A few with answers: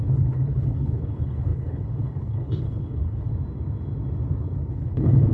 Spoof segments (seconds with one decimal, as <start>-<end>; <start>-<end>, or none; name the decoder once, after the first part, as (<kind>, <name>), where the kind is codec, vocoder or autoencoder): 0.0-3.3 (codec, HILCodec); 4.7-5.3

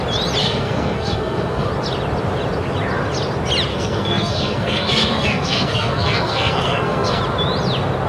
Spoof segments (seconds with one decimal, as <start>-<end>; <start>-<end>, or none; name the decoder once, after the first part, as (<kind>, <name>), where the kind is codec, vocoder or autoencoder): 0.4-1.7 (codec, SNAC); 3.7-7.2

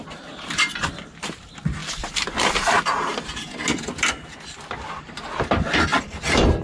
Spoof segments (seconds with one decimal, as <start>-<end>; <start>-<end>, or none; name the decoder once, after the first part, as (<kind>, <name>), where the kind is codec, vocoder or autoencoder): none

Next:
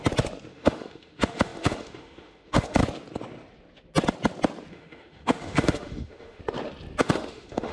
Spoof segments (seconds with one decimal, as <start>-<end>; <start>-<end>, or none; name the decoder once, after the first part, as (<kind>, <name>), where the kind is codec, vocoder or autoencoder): 0.5-2.8 (autoencoder, DAC-VAE); 4.7-6.4; 7.0-7.7

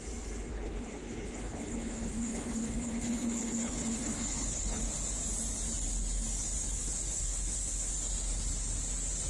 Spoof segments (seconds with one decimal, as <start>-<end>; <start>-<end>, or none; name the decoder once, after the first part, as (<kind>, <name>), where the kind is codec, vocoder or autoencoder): 0.5-4.8 (codec, HILCodec); 6.6-7.9

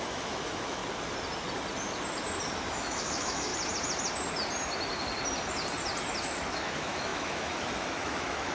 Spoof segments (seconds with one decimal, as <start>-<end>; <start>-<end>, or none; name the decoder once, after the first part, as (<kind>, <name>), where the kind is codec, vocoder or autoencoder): 0.0-0.8 (autoencoder, DAC-VAE); 2.7-3.5; 6.2-8.5